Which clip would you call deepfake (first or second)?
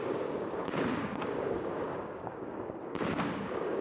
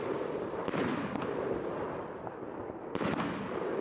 first